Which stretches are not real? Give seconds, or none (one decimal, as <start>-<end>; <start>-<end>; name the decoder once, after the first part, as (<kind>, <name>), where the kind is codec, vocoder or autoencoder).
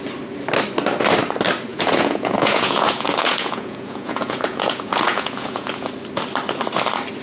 1.7-5.9 (vocoder, Vocos)